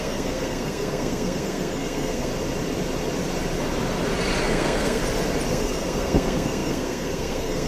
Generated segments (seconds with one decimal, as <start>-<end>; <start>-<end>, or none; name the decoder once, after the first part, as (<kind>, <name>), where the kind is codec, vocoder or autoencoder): 0.0-2.3 (codec, SNAC); 4.4-5.0; 5.5-7.7